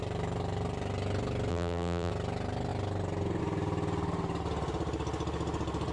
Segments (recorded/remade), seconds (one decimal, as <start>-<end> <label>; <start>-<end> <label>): 0.0-1.5 recorded; 1.5-2.1 remade; 2.1-5.9 recorded